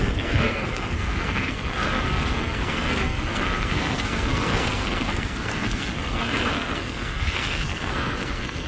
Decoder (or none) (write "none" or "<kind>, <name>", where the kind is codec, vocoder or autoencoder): codec, SNAC